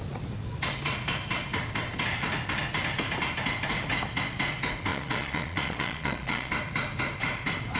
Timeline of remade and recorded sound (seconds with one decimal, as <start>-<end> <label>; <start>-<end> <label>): 0.0-4.9 recorded; 4.9-6.5 remade; 6.5-7.8 recorded